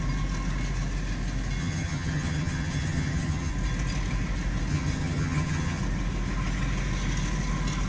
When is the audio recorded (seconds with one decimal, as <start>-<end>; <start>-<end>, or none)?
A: 0.0-1.6; 3.5-4.7; 5.8-7.9